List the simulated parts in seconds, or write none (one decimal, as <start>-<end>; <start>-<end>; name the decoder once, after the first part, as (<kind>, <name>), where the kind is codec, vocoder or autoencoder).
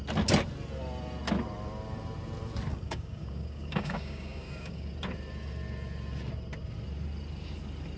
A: 2.7-4.9 (codec, DAC)